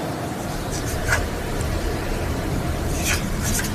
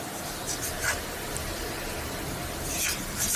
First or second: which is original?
second